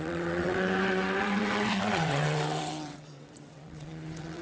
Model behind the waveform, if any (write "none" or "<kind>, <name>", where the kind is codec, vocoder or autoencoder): vocoder, WaveNeXt